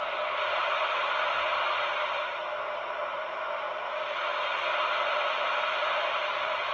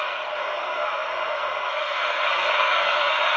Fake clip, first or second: second